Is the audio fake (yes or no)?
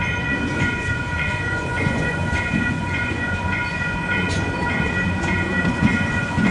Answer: yes